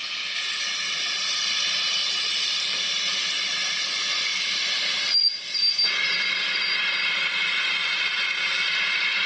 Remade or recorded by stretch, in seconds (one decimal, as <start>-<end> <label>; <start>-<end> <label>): 0.0-9.3 recorded